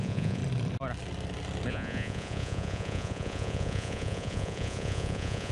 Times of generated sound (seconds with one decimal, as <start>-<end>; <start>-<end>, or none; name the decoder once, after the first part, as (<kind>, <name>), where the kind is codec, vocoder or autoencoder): 0.0-0.4 (vocoder, Vocos); 1.7-5.5